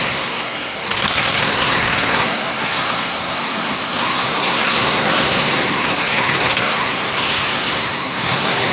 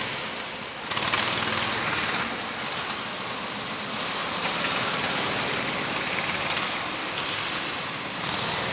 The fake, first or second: first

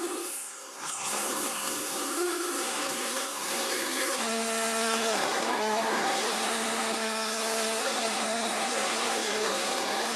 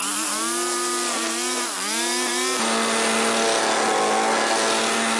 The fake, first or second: first